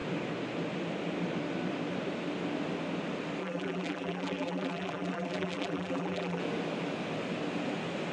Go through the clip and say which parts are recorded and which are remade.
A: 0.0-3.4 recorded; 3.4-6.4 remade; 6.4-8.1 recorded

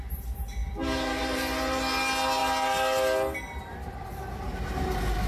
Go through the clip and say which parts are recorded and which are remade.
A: 0.0-5.3 recorded